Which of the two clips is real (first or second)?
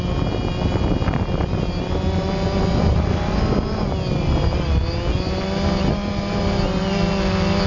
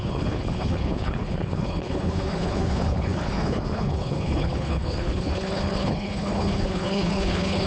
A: first